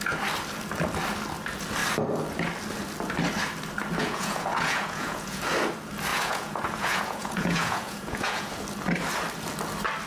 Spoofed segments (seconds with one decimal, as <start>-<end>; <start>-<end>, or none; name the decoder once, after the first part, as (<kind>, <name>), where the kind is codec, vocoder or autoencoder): 4.0-5.4 (vocoder, Vocos); 6.1-8.5